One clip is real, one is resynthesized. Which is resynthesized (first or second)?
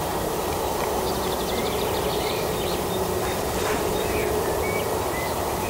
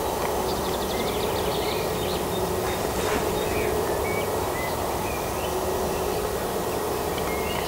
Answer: first